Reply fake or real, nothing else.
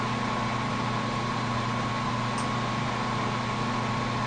real